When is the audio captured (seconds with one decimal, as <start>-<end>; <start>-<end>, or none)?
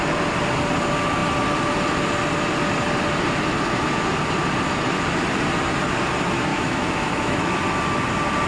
0.0-6.5; 7.5-8.5